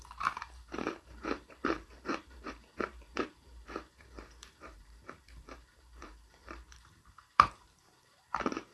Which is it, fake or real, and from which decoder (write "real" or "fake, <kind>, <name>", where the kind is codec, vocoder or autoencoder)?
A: fake, vocoder, BigVGAN v2